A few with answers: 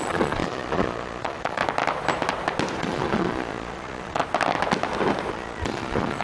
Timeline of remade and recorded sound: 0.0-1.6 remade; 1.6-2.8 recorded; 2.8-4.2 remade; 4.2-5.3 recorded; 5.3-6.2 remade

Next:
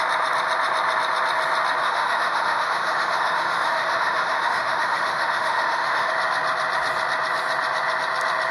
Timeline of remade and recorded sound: 0.0-1.8 recorded; 1.8-6.1 remade; 6.1-8.5 recorded